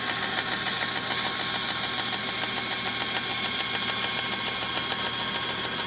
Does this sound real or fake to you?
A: real